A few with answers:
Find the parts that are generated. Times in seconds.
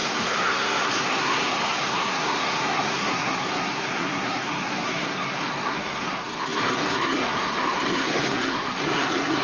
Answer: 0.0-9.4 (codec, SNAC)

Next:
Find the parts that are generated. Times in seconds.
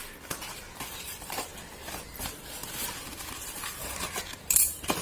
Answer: 1.0-1.5 (vocoder, BigVGAN v2); 2.2-2.6; 3.6-5.0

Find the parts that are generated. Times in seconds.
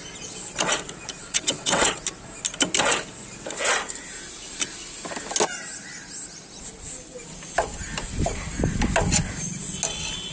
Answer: 1.2-1.9 (vocoder, WaveNeXt)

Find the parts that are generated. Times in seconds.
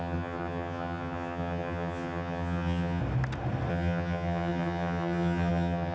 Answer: 0.0-3.0 (vocoder, HiFi-GAN); 3.7-5.9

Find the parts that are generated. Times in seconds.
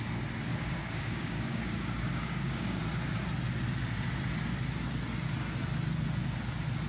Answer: 0.5-2.8 (codec, DAC)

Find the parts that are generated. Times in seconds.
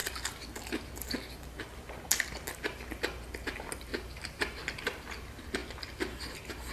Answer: 3.9-4.6 (vocoder, BigVGAN v2)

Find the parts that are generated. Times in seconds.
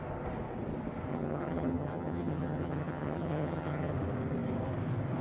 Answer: 1.1-3.9 (vocoder, HiFi-GAN)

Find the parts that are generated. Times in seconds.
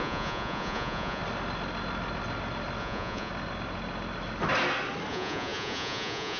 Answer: 0.0-1.2 (vocoder, Vocos); 2.8-3.3; 5.1-6.4